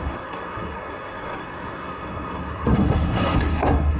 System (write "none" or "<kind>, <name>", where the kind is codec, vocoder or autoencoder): codec, SNAC